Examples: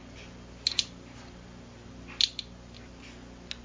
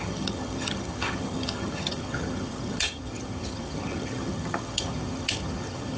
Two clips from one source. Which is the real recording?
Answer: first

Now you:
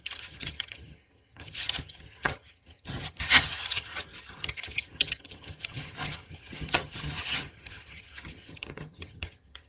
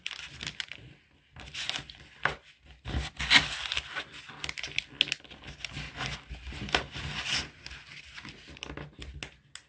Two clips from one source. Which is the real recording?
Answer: second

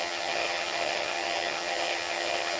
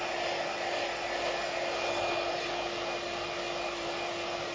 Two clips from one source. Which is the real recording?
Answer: second